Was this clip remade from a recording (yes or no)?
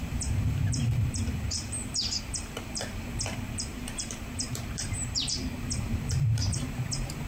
yes